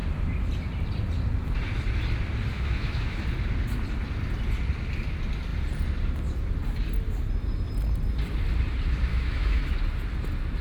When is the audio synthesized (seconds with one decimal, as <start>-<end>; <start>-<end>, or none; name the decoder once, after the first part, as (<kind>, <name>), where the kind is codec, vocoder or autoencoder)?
2.5-3.2 (autoencoder, DAC-VAE); 9.1-9.6